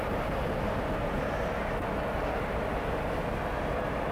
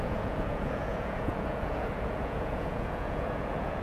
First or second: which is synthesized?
second